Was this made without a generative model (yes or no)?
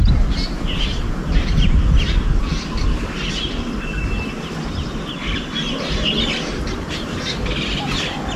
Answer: yes